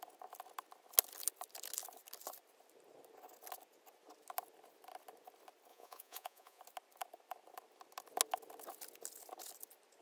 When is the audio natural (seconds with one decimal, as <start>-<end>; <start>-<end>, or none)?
0.0-5.7; 6.6-10.0